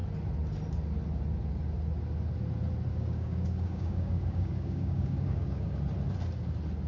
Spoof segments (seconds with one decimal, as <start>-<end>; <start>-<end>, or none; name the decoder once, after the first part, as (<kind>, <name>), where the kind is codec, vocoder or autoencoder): 2.9-5.8 (codec, DAC)